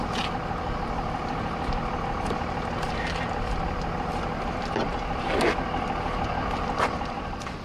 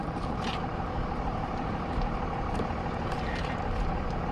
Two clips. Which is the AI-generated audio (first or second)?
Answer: second